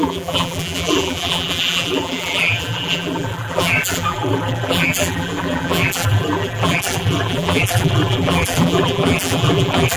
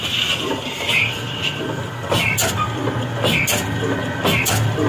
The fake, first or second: first